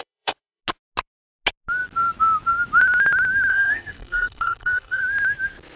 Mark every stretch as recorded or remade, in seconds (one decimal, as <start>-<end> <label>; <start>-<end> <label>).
0.0-0.6 remade; 0.6-3.5 recorded; 3.5-5.0 remade; 5.0-5.8 recorded